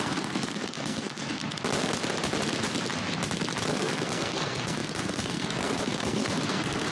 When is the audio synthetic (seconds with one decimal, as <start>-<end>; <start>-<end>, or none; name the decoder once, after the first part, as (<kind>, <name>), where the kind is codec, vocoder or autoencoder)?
0.0-1.4 (codec, SNAC); 3.7-6.9